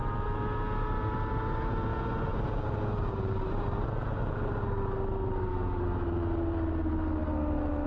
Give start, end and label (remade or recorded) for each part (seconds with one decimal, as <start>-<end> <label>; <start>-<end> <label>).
0.0-7.9 recorded